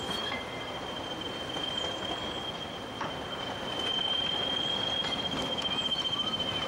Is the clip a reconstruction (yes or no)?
yes